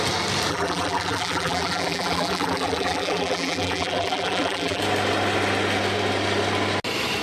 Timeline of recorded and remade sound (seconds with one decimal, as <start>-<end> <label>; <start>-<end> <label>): 0.0-0.5 recorded; 0.5-4.8 remade; 4.8-7.2 recorded